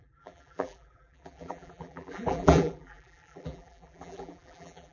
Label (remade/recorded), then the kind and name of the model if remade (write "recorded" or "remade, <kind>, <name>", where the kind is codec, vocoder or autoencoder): remade, vocoder, BigVGAN v2